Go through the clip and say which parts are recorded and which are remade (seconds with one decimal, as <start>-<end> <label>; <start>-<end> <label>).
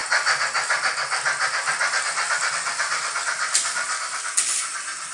0.0-5.1 recorded